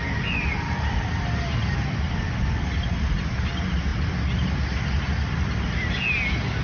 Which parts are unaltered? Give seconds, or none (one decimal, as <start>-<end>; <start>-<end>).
0.0-6.6